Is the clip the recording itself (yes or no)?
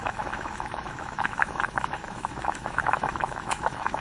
no